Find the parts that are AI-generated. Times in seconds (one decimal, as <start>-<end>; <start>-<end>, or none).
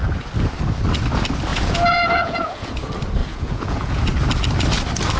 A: 1.5-2.7; 3.2-4.0